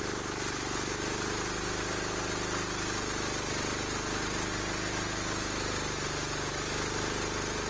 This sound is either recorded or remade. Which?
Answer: recorded